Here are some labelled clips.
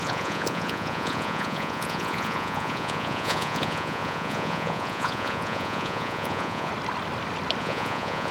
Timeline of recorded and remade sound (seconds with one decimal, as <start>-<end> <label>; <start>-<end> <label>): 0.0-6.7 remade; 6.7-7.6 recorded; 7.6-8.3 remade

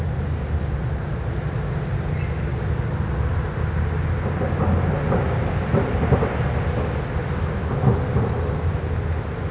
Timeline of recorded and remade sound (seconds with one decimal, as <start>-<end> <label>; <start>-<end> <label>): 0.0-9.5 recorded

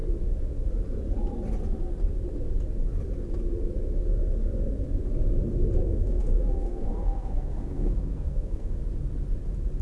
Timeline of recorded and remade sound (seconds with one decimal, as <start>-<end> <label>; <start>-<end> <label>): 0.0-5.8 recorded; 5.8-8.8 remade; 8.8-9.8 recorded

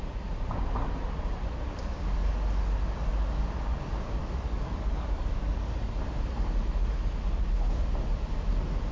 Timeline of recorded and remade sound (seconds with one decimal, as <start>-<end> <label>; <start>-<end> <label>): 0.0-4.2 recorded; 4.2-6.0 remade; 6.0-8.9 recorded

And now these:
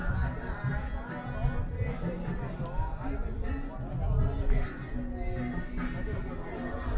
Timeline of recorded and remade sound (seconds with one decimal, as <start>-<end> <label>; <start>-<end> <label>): 0.0-7.0 recorded

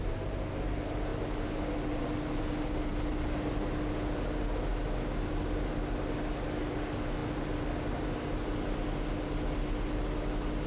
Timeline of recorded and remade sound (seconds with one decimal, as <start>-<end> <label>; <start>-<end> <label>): 0.0-10.7 recorded